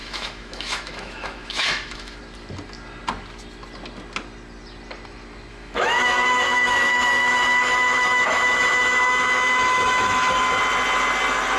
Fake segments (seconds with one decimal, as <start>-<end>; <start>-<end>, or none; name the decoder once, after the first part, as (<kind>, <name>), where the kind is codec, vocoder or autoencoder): 0.0-2.2 (autoencoder, DAC-VAE); 5.5-10.6